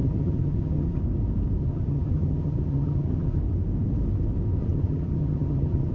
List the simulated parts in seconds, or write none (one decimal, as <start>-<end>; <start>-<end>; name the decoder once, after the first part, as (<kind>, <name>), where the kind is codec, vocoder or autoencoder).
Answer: 0.0-1.0 (vocoder, HiFi-GAN); 1.6-3.4; 4.6-5.9